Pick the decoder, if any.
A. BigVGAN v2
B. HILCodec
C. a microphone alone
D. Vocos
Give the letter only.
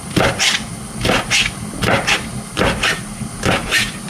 C